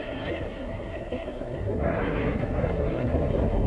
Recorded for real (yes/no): no